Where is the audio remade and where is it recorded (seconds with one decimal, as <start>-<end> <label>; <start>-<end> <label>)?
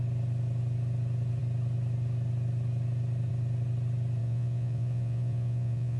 0.0-4.2 recorded; 4.2-6.0 remade